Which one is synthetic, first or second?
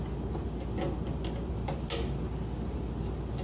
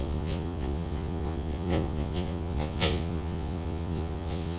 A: second